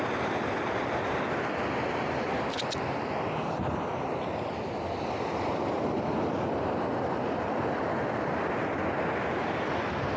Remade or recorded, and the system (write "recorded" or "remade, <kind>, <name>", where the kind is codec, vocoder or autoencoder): recorded